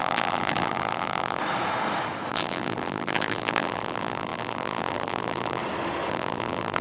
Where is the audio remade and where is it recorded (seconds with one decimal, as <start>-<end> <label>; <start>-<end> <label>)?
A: 0.0-1.4 remade; 1.4-2.3 recorded; 2.3-5.6 remade; 5.6-6.1 recorded; 6.1-6.8 remade